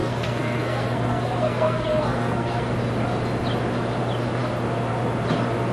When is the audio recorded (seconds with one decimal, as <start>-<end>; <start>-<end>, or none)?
2.7-5.7